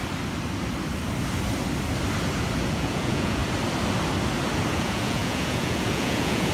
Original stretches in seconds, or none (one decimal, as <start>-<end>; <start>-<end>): 0.0-2.7; 3.4-4.7